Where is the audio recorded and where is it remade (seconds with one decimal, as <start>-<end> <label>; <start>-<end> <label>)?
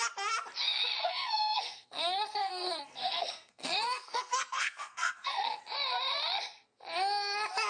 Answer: 0.0-1.0 recorded; 1.0-5.6 remade; 5.6-7.7 recorded